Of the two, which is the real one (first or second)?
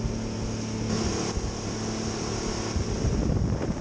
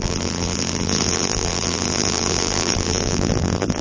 first